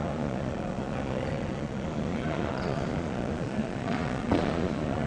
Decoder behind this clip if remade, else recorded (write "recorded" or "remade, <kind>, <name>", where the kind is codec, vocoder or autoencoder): remade, vocoder, Vocos